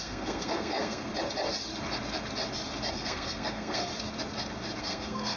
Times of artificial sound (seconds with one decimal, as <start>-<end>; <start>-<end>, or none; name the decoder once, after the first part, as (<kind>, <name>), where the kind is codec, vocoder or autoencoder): 0.0-1.1 (codec, SNAC); 2.9-3.9; 4.8-5.4